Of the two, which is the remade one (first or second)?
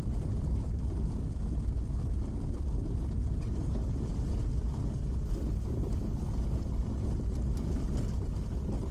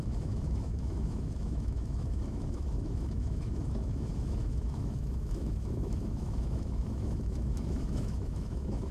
second